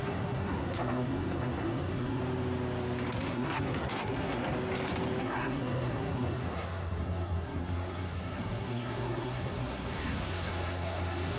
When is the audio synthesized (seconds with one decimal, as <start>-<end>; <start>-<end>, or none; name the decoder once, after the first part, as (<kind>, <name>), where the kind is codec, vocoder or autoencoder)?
0.0-2.2 (codec, SNAC); 3.1-4.4; 5.2-11.4